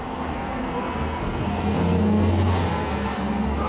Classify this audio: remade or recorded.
remade